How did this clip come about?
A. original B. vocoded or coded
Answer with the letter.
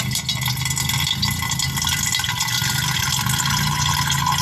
A